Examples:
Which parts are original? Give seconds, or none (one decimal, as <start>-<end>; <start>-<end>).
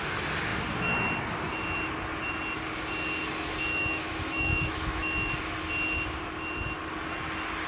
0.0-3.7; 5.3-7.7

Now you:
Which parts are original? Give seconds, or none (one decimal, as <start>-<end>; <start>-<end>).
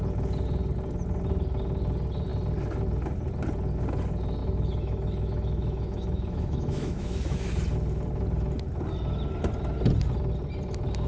0.0-4.4; 7.5-11.1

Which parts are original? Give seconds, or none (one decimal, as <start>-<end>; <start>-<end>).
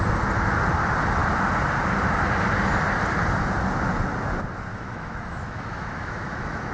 0.0-4.7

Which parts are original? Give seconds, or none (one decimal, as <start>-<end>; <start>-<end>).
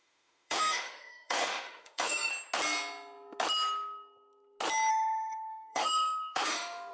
2.3-4.9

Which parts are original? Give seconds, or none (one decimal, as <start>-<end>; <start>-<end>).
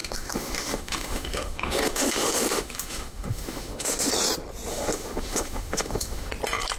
4.1-4.7; 6.3-6.8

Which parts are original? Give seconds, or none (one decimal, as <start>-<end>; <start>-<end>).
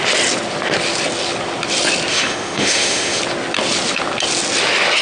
0.0-2.1; 3.2-5.0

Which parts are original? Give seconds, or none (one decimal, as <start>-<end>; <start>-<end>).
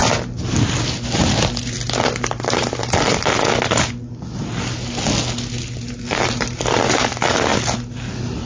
0.0-8.5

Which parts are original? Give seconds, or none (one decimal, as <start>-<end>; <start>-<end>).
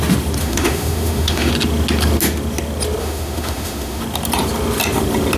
0.0-0.4; 1.5-3.0; 4.0-5.4